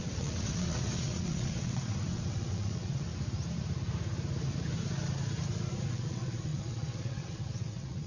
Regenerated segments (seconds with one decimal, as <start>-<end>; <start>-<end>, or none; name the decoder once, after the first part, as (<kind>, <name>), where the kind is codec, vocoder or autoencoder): 0.0-3.1 (vocoder, WaveNeXt); 5.9-8.1